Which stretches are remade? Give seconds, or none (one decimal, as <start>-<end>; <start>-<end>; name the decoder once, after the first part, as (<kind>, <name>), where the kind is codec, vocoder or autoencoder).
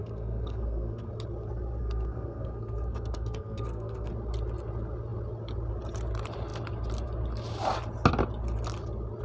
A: 0.0-1.1 (codec, SNAC); 1.8-4.1